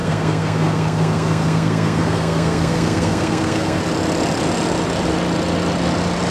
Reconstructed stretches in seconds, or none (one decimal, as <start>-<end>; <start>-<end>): 0.0-3.8